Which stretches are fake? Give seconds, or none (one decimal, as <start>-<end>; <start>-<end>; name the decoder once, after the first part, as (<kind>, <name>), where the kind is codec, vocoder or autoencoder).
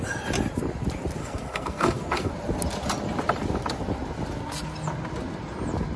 1.2-2.3 (codec, SNAC)